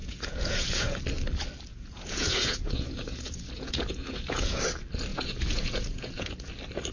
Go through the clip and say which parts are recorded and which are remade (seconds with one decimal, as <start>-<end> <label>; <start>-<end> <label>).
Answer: 0.0-1.0 remade; 1.0-1.7 recorded; 1.7-4.6 remade; 4.6-5.1 recorded; 5.1-6.5 remade; 6.5-6.9 recorded